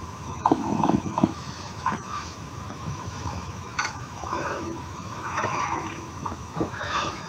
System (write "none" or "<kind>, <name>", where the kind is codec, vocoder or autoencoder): autoencoder, DAC-VAE